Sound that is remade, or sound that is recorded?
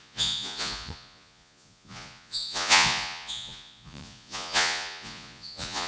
remade